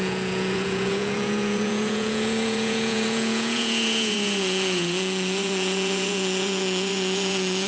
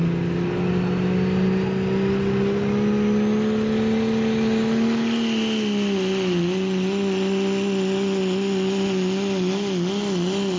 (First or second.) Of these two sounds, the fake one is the first